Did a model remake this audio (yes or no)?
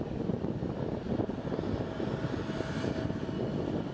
no